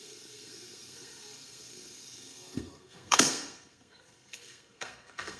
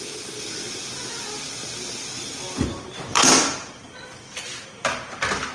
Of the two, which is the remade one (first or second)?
first